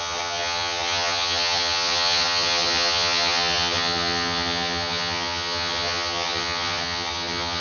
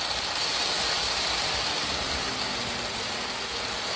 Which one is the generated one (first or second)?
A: first